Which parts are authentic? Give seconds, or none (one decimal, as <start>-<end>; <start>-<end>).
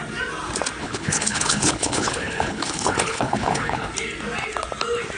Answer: 0.0-0.8; 3.9-5.2